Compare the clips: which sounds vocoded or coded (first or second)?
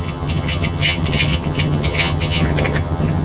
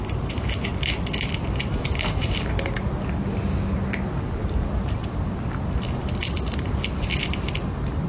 first